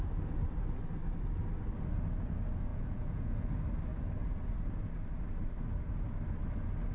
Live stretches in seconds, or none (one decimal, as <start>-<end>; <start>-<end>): 0.0-2.7; 3.5-6.9